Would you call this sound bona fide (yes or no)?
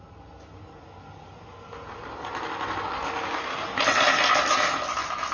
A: yes